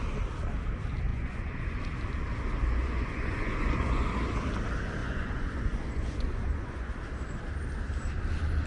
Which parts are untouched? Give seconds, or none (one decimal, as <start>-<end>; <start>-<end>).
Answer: 0.0-1.1; 1.8-2.8; 4.1-5.0; 6.9-8.7